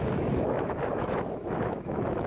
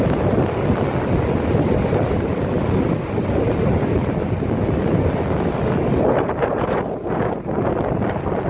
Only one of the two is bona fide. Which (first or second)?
second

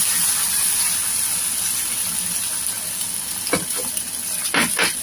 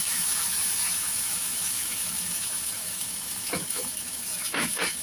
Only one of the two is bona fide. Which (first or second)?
first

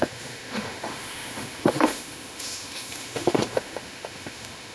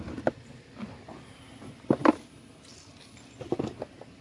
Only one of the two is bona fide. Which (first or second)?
second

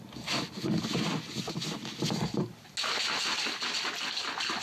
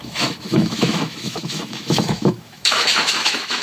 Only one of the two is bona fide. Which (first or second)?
first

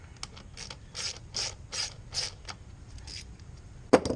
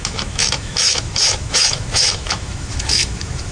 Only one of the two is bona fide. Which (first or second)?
first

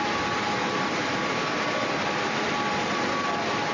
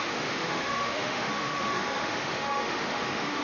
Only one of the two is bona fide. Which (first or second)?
first